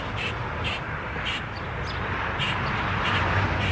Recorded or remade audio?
recorded